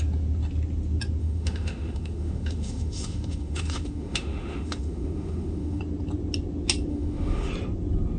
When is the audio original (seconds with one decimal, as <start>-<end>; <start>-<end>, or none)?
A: 0.0-1.2; 5.8-6.9; 7.5-8.2